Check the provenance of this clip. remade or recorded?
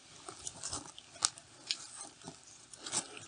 recorded